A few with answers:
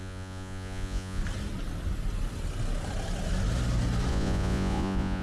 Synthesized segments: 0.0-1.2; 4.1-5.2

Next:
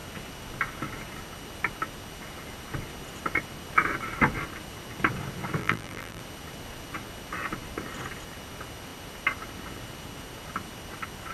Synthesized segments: 5.6-6.2

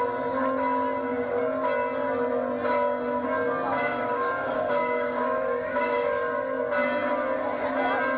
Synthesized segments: 3.7-6.6

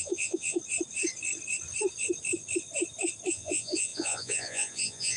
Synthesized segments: 0.0-0.6; 3.3-5.2

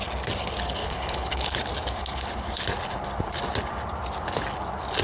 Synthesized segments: 0.8-1.5

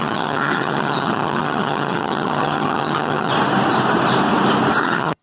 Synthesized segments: 0.0-3.3; 4.8-5.2

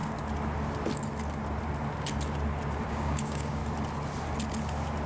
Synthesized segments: 2.9-3.6